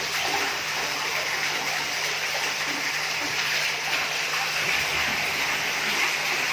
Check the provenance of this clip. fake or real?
fake